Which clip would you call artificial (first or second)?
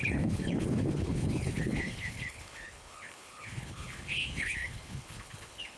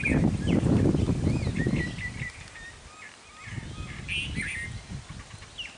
first